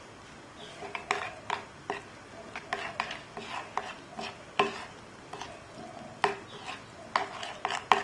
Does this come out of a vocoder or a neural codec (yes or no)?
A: no